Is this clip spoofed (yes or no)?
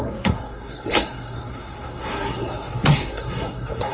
yes